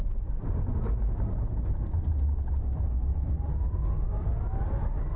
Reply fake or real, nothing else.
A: real